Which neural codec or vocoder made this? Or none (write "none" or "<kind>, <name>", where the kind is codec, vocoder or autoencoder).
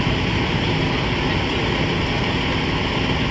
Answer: none